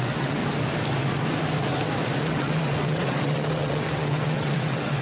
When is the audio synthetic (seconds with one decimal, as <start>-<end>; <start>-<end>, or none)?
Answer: 0.0-0.4; 2.2-5.0